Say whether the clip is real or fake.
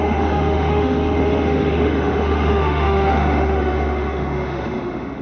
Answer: fake